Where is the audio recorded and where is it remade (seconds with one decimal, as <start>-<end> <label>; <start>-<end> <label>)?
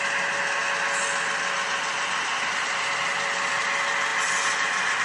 0.0-5.0 recorded